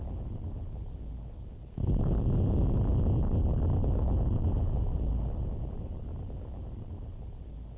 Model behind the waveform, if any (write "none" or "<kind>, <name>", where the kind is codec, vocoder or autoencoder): none